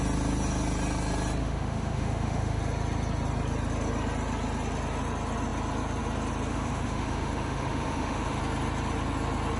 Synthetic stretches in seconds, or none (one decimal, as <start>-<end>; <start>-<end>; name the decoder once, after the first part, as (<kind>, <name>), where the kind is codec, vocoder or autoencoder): 1.4-2.6 (autoencoder, DAC-VAE); 6.5-8.4